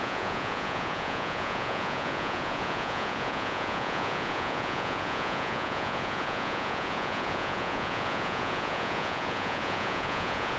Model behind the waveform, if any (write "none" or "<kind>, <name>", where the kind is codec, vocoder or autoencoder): vocoder, Vocos